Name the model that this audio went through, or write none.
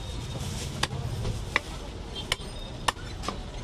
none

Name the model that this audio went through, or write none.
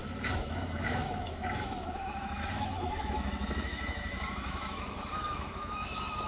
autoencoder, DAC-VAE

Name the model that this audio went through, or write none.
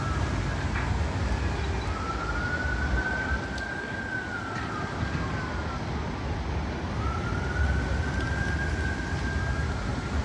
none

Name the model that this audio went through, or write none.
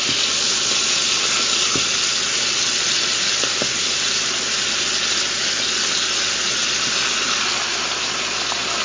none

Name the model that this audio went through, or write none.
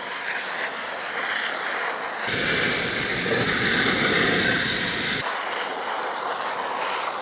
none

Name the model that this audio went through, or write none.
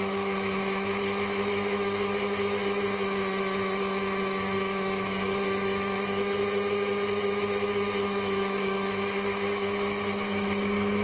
autoencoder, DAC-VAE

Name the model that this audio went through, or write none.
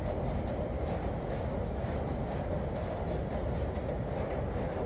none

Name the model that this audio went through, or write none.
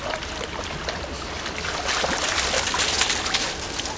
none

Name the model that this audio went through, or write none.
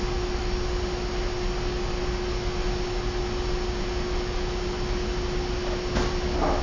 none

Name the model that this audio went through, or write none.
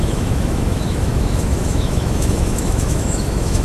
autoencoder, DAC-VAE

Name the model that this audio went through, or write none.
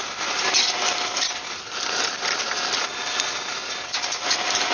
none